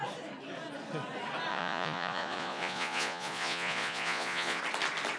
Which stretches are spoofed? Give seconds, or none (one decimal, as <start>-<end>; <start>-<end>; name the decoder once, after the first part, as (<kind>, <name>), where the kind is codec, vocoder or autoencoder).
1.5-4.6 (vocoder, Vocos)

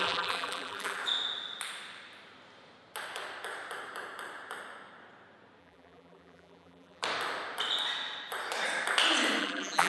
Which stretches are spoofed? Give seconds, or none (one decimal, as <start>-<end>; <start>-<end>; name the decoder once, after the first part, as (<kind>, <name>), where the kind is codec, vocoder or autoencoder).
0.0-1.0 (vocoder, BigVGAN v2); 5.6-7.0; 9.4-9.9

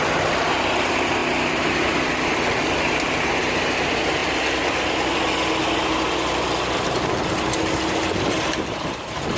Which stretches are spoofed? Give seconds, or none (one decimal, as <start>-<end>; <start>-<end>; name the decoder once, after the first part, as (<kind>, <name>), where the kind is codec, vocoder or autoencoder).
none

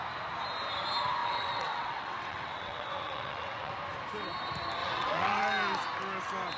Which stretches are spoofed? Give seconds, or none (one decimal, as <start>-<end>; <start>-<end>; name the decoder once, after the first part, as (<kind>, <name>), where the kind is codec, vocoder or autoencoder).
1.2-3.7 (vocoder, WaveNeXt); 4.8-5.4

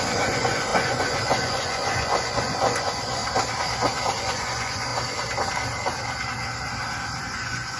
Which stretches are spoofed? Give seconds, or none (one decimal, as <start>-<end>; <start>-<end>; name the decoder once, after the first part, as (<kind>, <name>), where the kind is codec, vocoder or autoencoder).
0.0-3.2 (vocoder, Vocos); 4.2-4.9; 7.2-7.8